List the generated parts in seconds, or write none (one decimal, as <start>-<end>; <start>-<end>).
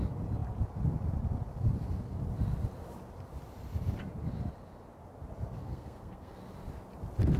5.6-6.4